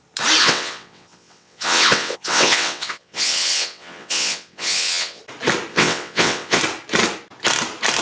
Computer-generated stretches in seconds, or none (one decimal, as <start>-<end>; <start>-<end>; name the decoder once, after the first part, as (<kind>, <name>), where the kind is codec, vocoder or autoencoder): 0.4-5.2 (vocoder, WaveNeXt); 5.7-6.6